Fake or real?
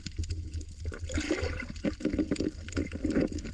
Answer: real